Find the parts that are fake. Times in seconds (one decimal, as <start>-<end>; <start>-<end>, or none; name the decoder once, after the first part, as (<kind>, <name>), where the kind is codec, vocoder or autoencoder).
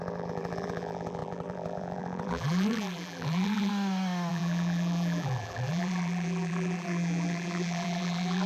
0.0-3.7 (vocoder, BigVGAN v2); 4.3-8.5